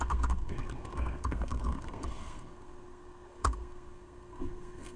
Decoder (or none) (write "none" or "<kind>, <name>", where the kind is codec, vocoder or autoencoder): codec, SNAC